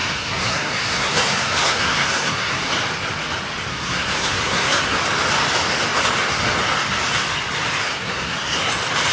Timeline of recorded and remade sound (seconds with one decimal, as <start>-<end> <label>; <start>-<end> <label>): 0.0-2.7 remade; 2.7-3.7 recorded; 3.7-5.0 remade; 5.0-7.8 recorded; 7.8-8.7 remade; 8.7-9.1 recorded